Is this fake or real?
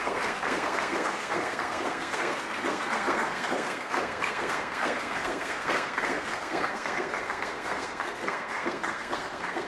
fake